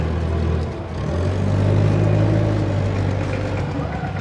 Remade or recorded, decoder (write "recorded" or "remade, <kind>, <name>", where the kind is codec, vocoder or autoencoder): recorded